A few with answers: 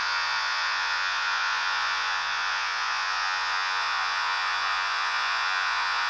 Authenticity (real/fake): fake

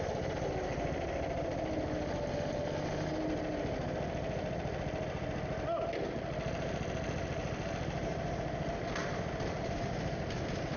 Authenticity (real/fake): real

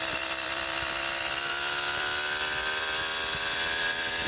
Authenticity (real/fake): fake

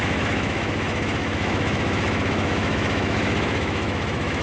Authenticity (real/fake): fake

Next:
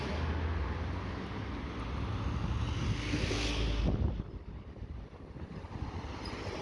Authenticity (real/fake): real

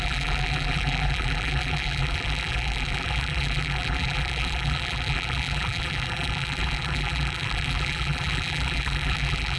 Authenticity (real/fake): fake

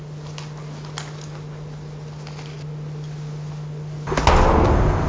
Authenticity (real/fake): real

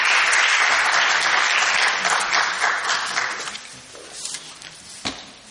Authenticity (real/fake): real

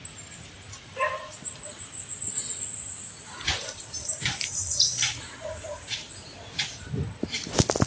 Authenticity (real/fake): real